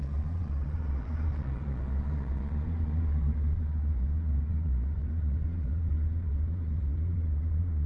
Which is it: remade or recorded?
remade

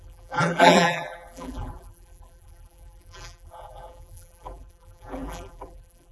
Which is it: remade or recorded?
remade